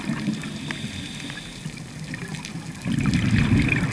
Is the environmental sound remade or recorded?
recorded